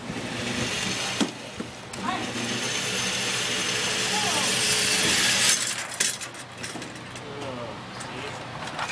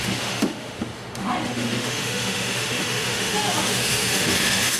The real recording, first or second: first